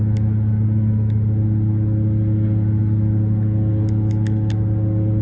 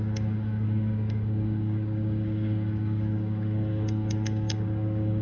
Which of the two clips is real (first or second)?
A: first